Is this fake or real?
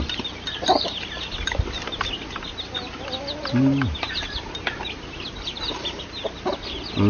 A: real